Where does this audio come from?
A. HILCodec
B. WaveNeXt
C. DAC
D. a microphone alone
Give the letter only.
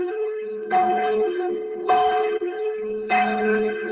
A